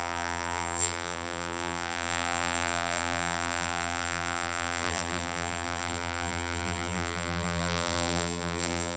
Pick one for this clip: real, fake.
fake